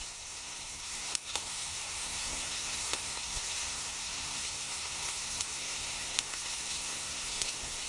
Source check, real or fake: fake